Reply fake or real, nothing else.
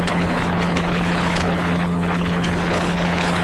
fake